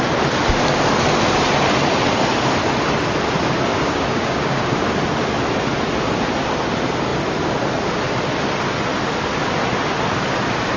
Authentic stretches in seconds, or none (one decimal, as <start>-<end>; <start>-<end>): 0.0-3.7; 4.9-10.8